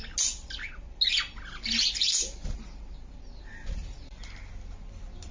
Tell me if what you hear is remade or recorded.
recorded